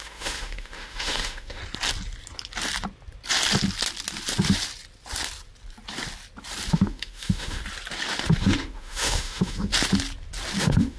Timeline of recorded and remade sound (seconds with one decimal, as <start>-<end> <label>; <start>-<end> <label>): 0.0-1.6 remade; 1.6-6.7 recorded; 6.7-7.6 remade; 7.6-8.4 recorded; 8.4-9.7 remade; 9.7-10.6 recorded; 10.6-11.0 remade